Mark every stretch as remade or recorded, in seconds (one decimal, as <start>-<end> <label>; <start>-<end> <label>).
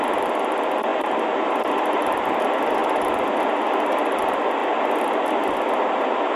0.0-6.4 recorded